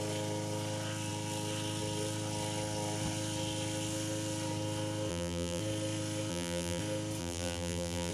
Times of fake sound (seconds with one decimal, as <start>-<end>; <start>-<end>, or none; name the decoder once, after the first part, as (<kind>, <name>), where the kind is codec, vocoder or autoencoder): 5.1-5.6 (vocoder, BigVGAN v2); 6.3-6.8; 7.2-8.1